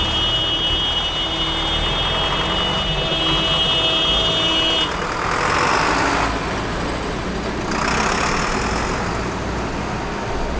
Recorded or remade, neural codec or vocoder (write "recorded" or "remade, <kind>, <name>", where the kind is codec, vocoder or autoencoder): recorded